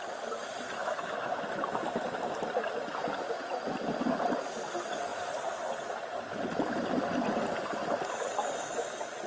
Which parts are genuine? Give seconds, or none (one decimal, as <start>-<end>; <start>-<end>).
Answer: 0.0-0.8; 1.4-9.3